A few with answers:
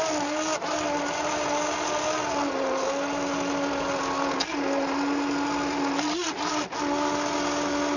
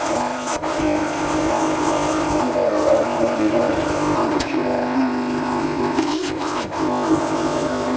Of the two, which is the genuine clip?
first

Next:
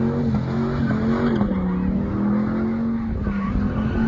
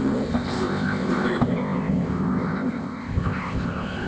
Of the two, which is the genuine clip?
first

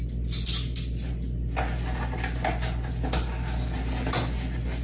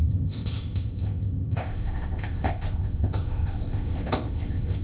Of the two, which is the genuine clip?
first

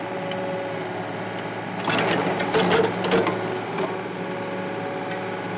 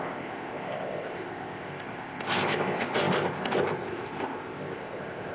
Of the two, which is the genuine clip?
first